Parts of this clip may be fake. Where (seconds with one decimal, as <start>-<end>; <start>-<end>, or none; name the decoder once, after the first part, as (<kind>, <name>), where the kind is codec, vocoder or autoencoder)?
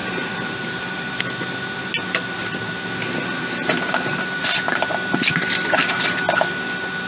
0.0-1.2 (vocoder, BigVGAN v2)